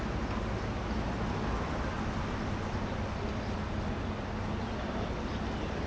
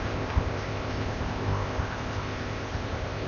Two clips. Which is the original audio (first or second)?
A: first